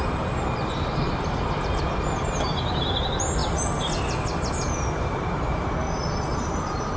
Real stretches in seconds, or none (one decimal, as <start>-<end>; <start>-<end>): 3.4-4.5; 5.8-6.3